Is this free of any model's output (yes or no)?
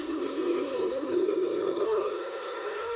no